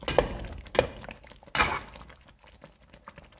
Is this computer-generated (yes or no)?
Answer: no